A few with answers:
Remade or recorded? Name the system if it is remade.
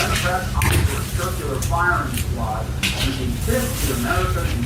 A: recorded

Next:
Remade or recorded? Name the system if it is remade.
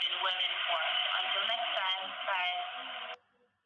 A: recorded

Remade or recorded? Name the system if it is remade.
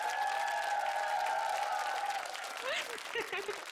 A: recorded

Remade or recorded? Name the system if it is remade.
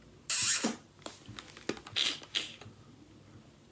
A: recorded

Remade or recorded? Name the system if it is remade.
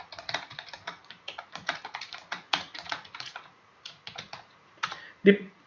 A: remade, vocoder, Vocos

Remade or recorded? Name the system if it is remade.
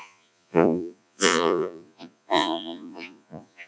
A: remade, vocoder, Vocos